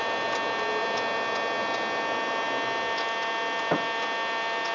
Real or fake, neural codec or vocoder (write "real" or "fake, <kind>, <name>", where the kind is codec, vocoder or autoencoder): real